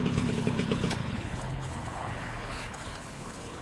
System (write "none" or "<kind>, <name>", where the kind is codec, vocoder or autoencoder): codec, HILCodec